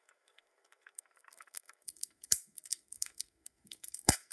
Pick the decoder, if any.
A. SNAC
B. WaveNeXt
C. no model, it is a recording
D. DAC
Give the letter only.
A